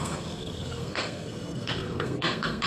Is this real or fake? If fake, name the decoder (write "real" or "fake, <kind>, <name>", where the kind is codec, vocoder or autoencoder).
fake, codec, SNAC